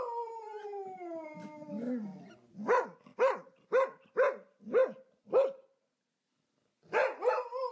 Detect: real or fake real